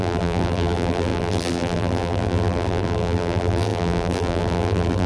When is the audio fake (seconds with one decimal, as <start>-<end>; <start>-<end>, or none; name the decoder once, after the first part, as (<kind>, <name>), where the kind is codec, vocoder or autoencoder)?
0.0-5.1 (vocoder, BigVGAN v2)